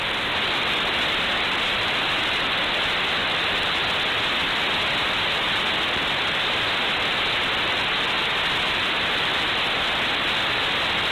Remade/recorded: recorded